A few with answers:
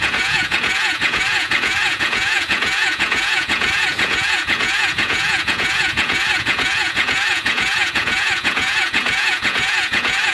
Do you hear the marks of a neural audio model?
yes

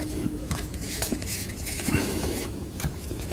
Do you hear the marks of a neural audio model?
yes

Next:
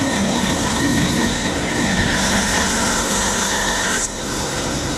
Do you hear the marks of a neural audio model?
yes